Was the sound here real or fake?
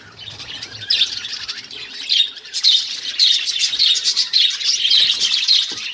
real